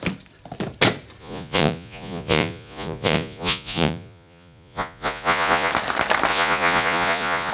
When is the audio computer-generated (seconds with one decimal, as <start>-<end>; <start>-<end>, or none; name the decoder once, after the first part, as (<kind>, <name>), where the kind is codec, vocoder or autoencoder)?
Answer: 1.2-5.7 (vocoder, Vocos); 6.3-7.5